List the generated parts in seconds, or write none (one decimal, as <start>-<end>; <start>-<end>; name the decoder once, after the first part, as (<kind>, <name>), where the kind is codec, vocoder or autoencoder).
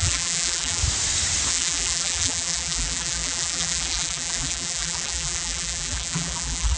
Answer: 0.0-0.8 (vocoder, BigVGAN v2); 1.5-6.8